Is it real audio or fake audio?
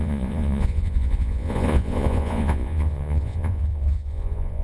fake